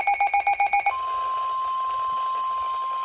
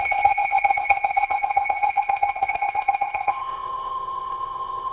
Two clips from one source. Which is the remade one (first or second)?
second